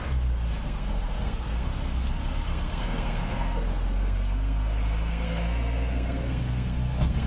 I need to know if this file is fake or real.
fake